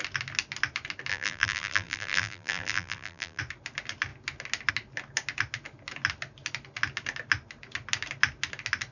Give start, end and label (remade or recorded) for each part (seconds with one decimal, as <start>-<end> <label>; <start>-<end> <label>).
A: 0.0-1.1 recorded; 1.1-3.4 remade; 3.4-8.9 recorded